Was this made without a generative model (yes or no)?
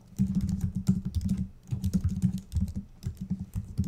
yes